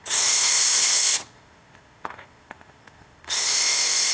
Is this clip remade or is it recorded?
remade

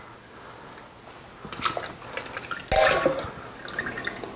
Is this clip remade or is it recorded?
recorded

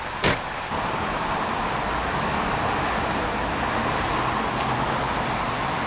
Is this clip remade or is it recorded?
recorded